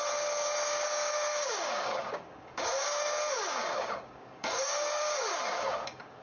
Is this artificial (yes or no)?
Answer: yes